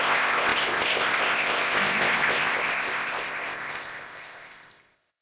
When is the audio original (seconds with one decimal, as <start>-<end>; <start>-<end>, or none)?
none